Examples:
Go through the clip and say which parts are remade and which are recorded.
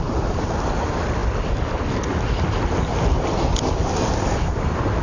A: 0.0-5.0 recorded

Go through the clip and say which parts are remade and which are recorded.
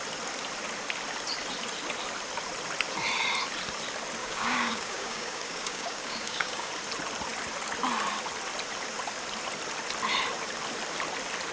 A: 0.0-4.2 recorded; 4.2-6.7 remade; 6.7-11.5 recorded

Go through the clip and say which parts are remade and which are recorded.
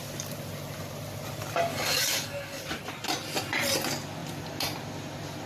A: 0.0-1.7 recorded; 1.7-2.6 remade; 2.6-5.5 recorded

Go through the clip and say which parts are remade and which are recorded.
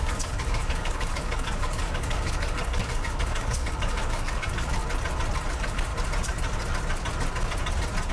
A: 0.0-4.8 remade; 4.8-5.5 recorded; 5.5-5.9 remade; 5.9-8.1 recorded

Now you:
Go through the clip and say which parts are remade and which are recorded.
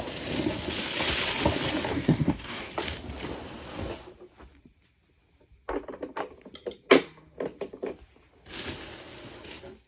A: 0.0-1.9 recorded; 1.9-2.7 remade; 2.7-9.9 recorded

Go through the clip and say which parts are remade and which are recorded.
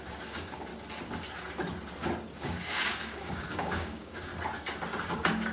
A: 0.0-0.7 remade; 0.7-2.4 recorded; 2.4-4.3 remade; 4.3-5.0 recorded; 5.0-5.5 remade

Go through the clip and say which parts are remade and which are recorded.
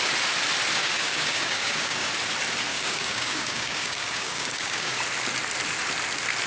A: 0.0-0.8 recorded; 0.8-2.1 remade; 2.1-2.7 recorded; 2.7-5.0 remade; 5.0-6.5 recorded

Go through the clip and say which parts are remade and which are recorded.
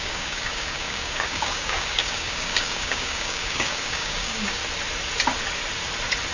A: 0.0-4.6 remade; 4.6-6.3 recorded